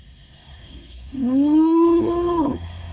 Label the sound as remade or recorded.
remade